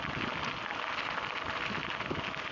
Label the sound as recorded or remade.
recorded